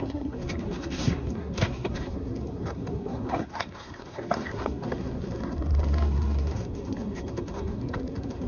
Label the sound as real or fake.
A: fake